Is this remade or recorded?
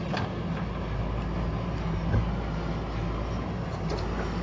recorded